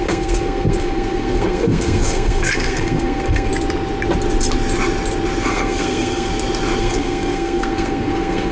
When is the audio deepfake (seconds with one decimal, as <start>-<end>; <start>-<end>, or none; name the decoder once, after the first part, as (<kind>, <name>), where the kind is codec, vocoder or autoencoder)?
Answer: 0.0-3.5 (codec, SNAC); 5.5-6.3; 6.8-8.5